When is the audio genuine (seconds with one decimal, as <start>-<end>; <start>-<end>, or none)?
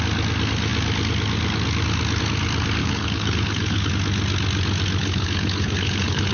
0.0-2.8; 3.9-5.0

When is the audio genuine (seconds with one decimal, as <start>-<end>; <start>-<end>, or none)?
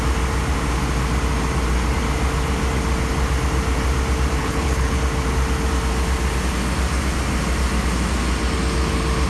0.0-4.4; 5.0-9.3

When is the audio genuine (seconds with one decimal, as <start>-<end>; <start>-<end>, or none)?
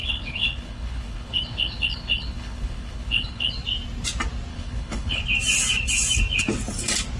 3.5-4.5; 5.2-7.2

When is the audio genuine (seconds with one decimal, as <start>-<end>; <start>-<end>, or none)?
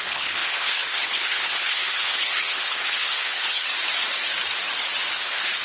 3.7-5.1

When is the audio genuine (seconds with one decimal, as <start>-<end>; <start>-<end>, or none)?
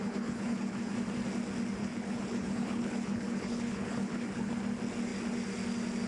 0.9-1.8; 4.5-6.1